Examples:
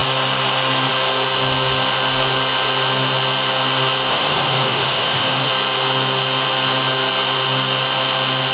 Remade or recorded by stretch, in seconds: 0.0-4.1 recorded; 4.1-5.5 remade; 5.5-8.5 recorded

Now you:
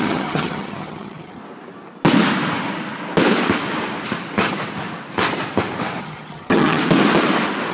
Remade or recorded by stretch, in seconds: 0.0-1.4 remade; 1.4-6.0 recorded; 6.0-6.8 remade; 6.8-7.7 recorded